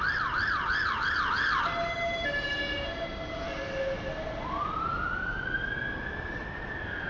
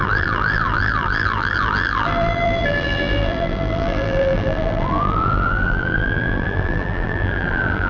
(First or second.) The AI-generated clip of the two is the second